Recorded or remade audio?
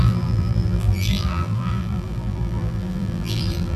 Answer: remade